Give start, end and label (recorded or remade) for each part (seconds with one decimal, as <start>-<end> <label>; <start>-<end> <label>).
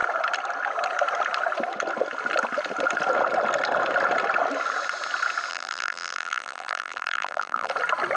0.0-5.5 recorded; 5.5-7.7 remade; 7.7-8.2 recorded